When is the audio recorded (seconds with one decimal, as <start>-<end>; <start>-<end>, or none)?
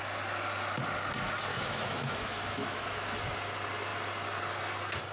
0.0-1.5; 3.2-5.1